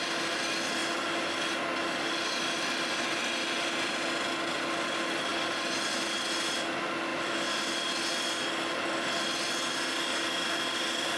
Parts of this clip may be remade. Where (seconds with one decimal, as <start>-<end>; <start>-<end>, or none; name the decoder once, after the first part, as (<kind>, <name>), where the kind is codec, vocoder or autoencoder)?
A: none